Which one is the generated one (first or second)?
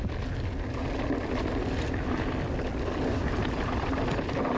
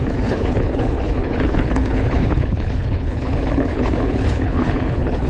second